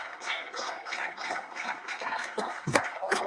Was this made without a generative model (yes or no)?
no